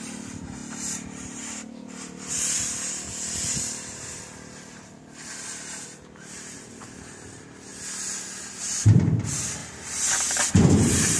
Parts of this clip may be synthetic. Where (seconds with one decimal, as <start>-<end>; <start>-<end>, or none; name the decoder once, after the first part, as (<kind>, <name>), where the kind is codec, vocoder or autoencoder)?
0.0-7.7 (vocoder, BigVGAN v2); 8.5-9.6; 10.5-11.2